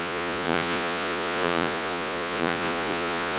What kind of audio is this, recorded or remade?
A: remade